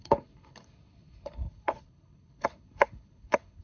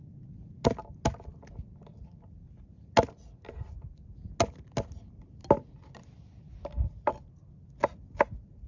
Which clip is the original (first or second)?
second